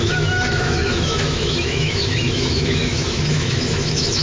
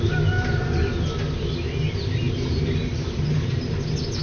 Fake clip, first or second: first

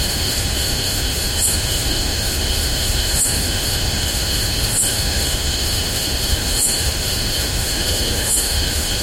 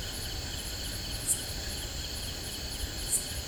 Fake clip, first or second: first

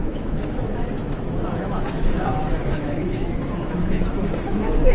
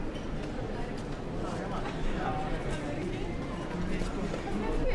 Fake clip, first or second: first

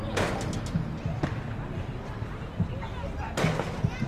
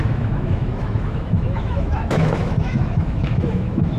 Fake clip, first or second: second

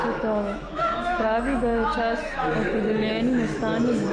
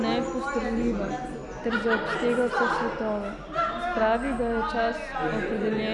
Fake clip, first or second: first